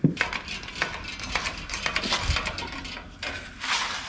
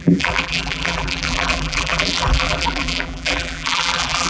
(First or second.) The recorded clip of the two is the first